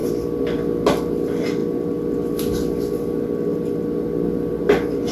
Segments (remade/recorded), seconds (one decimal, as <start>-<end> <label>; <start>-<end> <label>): 0.0-5.1 recorded